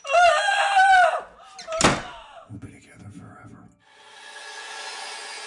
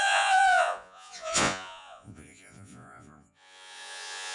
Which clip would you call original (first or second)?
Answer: first